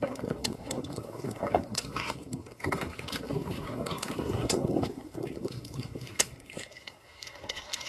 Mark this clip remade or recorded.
remade